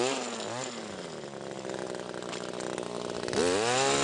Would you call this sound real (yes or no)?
yes